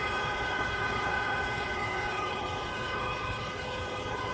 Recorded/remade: remade